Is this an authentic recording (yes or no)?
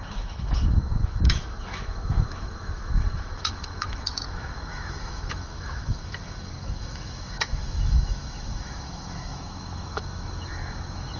no